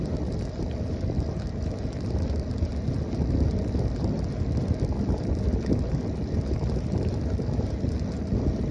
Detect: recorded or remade recorded